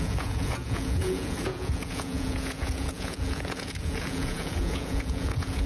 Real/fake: fake